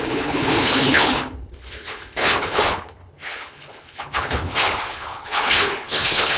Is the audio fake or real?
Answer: fake